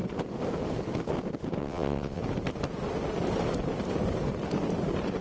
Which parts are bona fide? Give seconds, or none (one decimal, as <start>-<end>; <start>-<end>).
0.0-1.6; 2.2-5.2